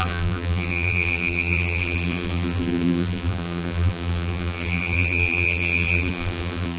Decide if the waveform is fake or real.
fake